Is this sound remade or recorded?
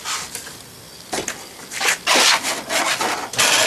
recorded